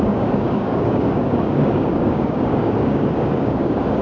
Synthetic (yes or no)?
yes